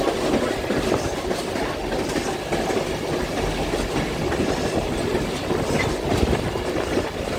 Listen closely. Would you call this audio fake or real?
real